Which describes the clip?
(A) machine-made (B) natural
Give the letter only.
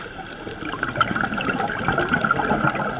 B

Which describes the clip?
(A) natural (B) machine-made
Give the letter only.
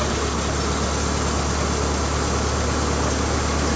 A